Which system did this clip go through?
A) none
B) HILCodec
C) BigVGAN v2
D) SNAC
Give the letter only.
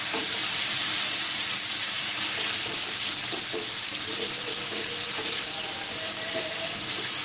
C